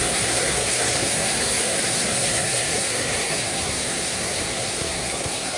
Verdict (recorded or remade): remade